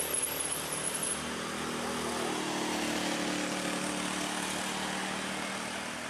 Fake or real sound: real